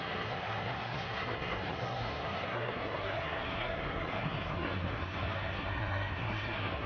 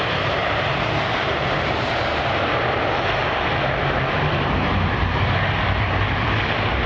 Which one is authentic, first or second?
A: second